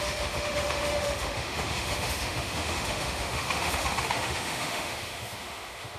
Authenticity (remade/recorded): remade